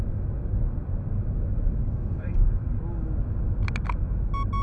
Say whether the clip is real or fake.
real